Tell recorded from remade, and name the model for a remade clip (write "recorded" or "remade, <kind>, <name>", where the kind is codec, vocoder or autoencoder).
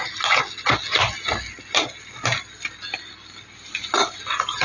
recorded